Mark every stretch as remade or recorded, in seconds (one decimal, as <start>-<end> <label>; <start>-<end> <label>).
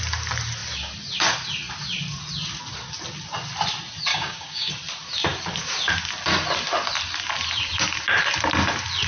0.0-4.1 recorded; 4.1-4.7 remade; 4.7-9.1 recorded